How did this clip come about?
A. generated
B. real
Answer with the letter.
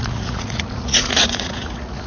A